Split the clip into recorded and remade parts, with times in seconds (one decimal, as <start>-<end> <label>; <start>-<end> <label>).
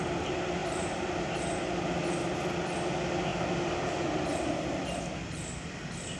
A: 0.0-6.2 recorded